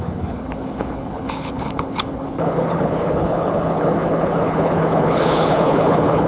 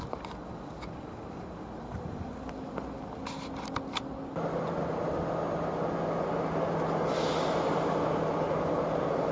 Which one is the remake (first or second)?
first